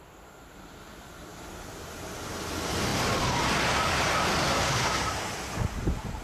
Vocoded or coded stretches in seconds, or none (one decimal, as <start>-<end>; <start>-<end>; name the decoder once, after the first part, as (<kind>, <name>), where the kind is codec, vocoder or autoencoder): none